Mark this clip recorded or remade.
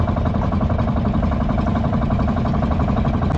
recorded